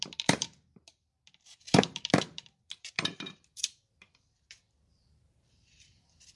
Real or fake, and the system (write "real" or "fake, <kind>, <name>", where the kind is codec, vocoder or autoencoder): fake, vocoder, BigVGAN v2